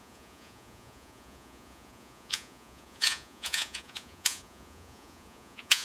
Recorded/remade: remade